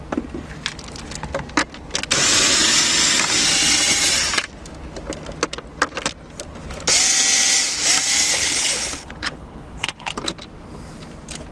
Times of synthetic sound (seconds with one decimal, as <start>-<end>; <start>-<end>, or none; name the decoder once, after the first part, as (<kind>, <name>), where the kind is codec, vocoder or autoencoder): 8.3-10.1 (codec, HILCodec)